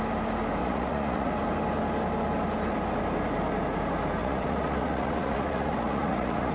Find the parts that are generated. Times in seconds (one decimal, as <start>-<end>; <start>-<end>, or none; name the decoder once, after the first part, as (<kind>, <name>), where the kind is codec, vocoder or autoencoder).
0.6-1.3 (vocoder, Vocos); 4.2-6.5